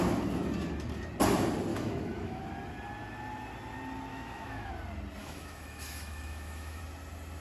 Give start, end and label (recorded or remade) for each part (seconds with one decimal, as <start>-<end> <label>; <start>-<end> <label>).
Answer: 0.0-1.7 recorded; 1.7-2.4 remade; 2.4-4.1 recorded; 4.1-4.7 remade; 4.7-5.2 recorded; 5.2-6.8 remade; 6.8-7.4 recorded